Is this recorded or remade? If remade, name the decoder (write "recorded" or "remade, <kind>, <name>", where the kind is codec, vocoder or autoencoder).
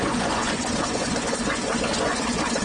remade, vocoder, Vocos